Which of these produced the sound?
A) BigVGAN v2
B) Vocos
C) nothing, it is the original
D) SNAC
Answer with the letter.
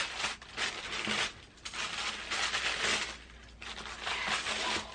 C